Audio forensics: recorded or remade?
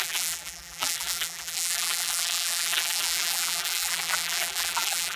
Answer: remade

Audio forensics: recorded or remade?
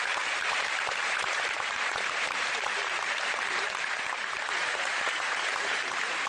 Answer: remade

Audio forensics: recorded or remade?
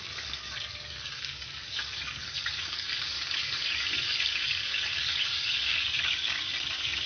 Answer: remade